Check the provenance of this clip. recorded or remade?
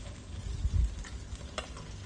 recorded